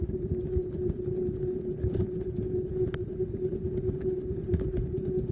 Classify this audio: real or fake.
real